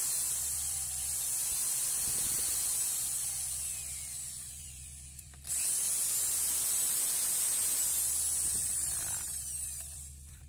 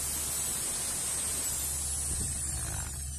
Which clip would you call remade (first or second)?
first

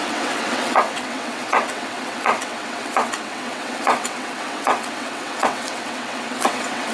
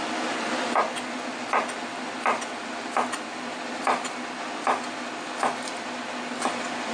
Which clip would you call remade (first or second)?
first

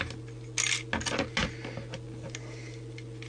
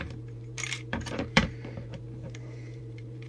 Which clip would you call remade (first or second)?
second